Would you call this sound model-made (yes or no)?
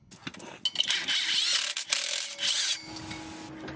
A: no